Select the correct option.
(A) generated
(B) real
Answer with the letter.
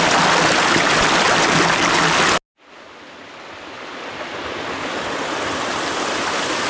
B